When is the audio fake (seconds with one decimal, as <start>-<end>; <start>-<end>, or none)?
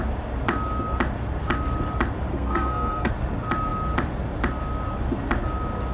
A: 2.3-3.1